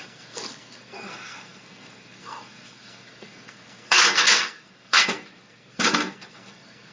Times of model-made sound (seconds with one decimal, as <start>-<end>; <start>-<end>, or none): 0.0-6.9